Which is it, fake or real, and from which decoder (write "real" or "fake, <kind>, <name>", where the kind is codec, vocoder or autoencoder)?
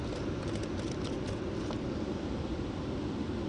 real